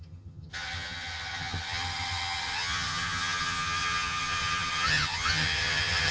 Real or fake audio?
fake